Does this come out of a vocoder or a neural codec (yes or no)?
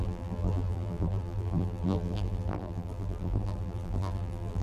yes